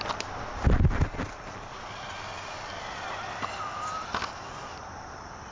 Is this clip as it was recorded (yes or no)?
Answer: yes